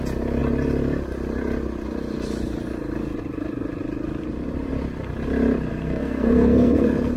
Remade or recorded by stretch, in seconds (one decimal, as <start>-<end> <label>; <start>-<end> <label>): 0.0-5.7 recorded; 5.7-7.2 remade